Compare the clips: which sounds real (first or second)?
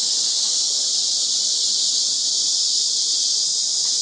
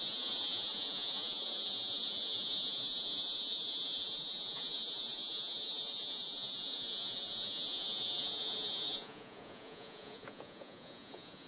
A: first